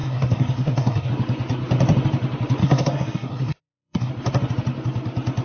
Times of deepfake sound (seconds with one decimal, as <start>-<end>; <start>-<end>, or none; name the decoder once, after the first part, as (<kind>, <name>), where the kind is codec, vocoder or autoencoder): 0.0-1.1 (codec, SNAC); 2.6-4.1